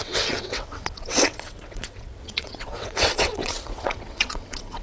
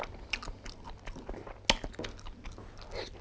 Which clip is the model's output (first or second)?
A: first